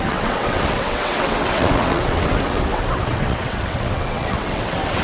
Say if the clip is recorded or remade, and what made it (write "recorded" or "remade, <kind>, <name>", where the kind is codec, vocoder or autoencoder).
remade, vocoder, WaveNeXt